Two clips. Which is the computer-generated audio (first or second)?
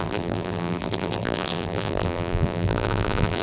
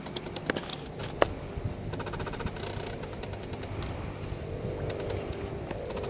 first